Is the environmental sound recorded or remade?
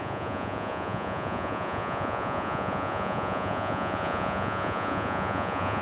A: remade